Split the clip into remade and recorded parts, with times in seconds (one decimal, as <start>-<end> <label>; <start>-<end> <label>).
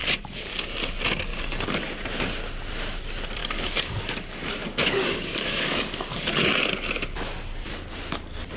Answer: 0.0-0.5 remade; 0.5-1.3 recorded; 1.3-1.9 remade; 1.9-3.4 recorded; 3.4-6.4 remade; 6.4-8.6 recorded